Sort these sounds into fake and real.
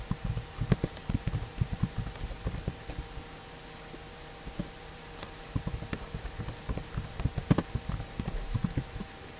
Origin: fake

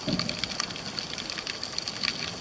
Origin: real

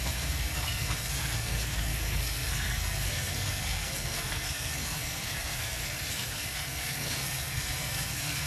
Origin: fake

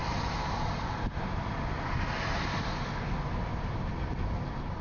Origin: real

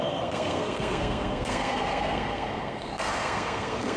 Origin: fake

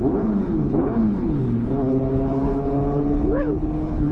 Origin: fake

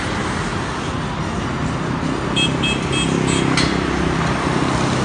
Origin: real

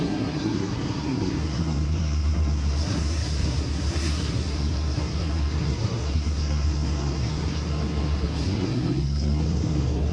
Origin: fake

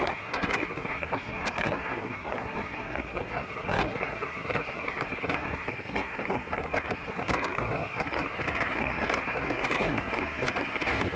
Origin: fake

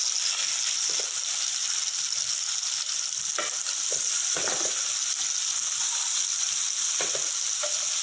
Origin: real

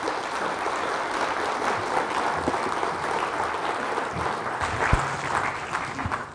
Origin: real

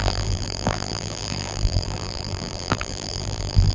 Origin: fake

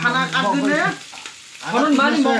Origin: real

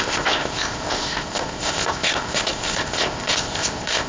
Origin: fake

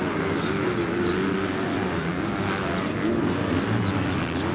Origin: real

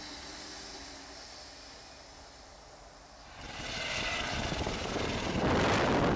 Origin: real